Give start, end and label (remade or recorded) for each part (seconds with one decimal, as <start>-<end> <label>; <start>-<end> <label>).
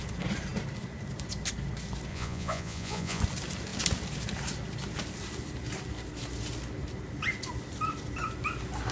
0.0-2.1 recorded; 2.1-3.2 remade; 3.2-8.9 recorded